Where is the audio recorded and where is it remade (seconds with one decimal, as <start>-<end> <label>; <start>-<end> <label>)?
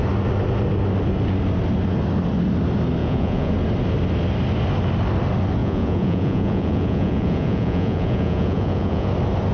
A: 0.0-3.0 recorded; 3.0-3.5 remade; 3.5-5.6 recorded; 5.6-9.1 remade; 9.1-9.5 recorded